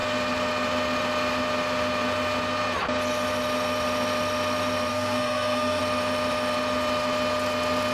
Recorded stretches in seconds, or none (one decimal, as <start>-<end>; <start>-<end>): 0.0-4.9; 5.8-7.9